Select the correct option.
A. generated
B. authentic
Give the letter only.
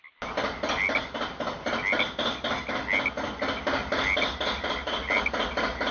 B